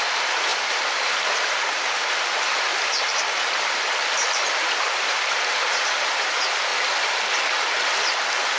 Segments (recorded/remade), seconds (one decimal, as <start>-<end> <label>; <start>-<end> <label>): 0.0-6.7 remade; 6.7-8.6 recorded